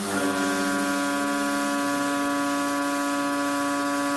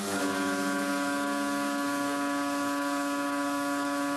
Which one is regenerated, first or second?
second